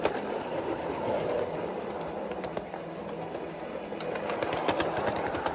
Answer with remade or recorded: recorded